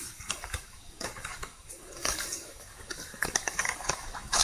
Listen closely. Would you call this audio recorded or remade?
remade